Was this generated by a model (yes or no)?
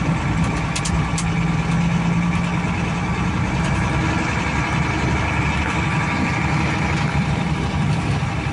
no